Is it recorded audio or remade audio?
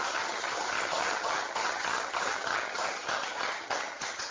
remade